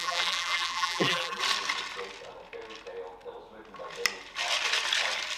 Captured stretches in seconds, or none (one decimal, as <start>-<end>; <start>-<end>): 1.4-5.4